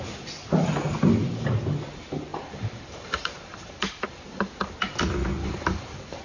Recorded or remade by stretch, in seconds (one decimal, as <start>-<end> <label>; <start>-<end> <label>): 0.0-2.3 recorded; 2.3-4.7 remade; 4.7-5.4 recorded; 5.4-6.2 remade